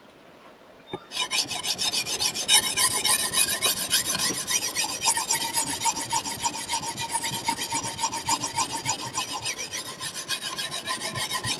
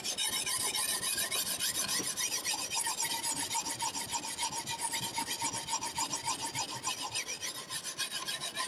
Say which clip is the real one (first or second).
first